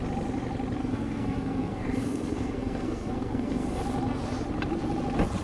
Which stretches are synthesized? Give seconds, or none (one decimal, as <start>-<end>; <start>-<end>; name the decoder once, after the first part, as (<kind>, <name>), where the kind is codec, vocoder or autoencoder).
0.8-3.8 (codec, SNAC)